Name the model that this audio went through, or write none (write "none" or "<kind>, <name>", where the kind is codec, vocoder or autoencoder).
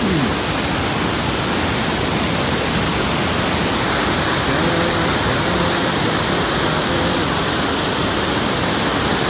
none